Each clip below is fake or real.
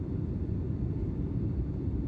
fake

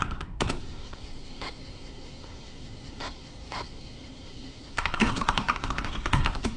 fake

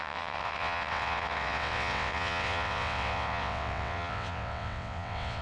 fake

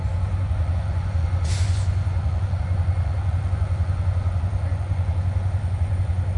fake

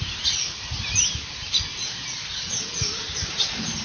real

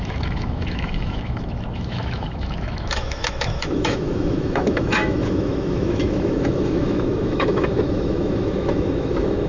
fake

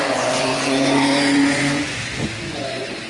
fake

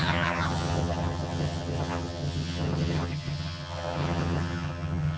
fake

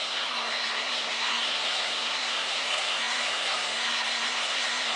fake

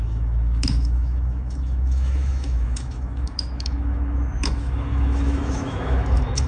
fake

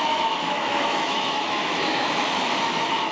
fake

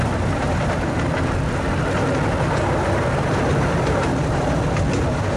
real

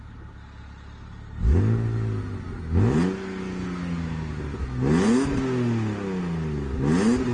real